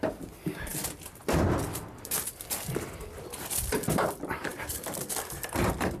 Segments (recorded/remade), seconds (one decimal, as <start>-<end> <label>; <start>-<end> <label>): 0.0-6.0 remade